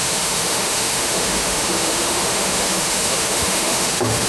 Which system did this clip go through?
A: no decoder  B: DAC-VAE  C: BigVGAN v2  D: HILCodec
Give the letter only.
B